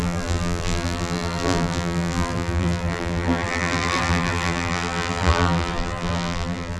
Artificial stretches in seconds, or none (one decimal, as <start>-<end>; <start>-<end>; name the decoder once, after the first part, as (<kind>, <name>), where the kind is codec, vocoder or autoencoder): 0.0-6.8 (vocoder, BigVGAN v2)